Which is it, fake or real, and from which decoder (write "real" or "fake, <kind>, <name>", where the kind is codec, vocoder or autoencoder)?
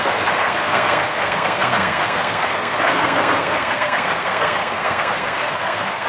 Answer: fake, codec, SNAC